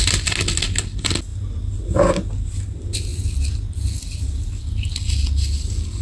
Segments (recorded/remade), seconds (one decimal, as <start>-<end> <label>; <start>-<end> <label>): 0.0-6.0 recorded